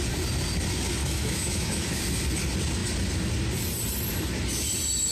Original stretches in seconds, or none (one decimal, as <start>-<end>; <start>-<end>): 0.0-1.0; 2.0-5.1